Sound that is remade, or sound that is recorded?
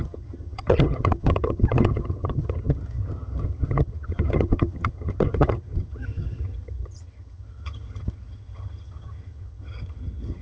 remade